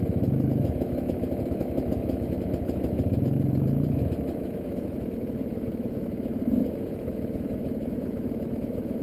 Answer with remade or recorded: remade